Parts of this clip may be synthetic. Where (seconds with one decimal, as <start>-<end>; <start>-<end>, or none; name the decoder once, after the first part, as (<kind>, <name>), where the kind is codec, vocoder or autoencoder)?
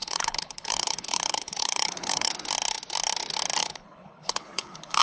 0.0-2.3 (codec, HILCodec); 3.6-5.0